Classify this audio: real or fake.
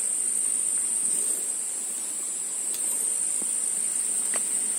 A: real